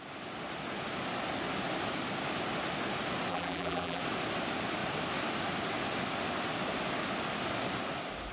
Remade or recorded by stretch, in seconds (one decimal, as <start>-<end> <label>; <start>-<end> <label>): 0.0-3.3 recorded; 3.3-4.0 remade; 4.0-8.3 recorded

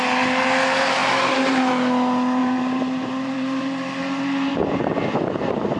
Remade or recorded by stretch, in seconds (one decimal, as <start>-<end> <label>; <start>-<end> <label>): 0.0-1.0 recorded; 1.0-1.7 remade; 1.7-2.4 recorded; 2.4-4.5 remade; 4.5-5.8 recorded

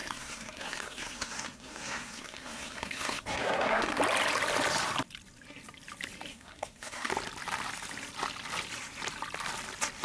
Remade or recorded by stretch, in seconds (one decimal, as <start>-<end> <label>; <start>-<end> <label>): 0.0-4.0 remade; 4.0-6.3 recorded; 6.3-7.1 remade; 7.1-10.0 recorded

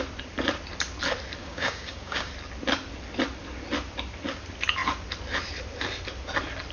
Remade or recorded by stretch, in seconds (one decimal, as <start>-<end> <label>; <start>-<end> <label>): 0.0-1.4 recorded; 1.4-2.3 remade; 2.3-6.7 recorded